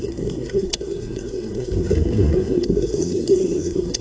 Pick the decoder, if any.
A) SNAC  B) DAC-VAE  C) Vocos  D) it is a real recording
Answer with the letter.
A